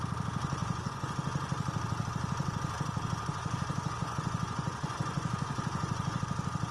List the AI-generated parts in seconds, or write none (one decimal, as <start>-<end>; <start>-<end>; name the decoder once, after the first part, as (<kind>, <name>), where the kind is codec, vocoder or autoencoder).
0.6-1.1 (vocoder, Vocos); 3.4-6.2